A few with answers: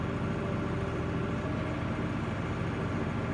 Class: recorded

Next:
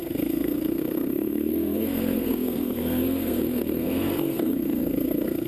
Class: remade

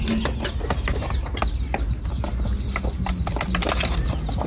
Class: recorded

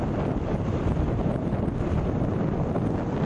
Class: recorded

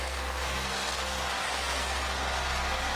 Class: remade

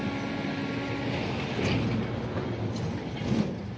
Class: recorded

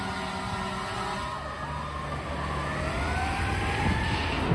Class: recorded